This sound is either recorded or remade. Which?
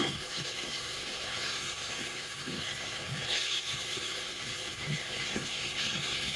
remade